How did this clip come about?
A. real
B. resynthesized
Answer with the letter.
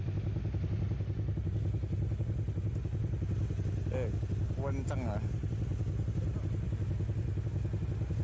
A